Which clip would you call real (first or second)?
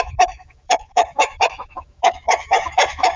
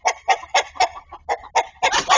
second